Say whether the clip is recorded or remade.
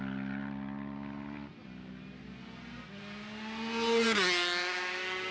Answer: recorded